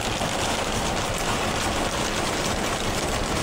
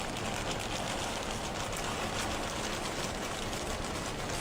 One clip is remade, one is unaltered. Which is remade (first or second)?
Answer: first